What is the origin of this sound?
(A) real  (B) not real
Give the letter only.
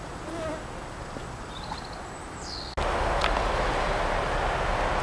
A